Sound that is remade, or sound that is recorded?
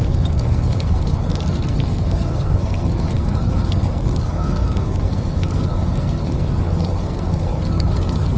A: remade